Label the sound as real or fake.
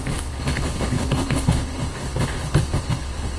fake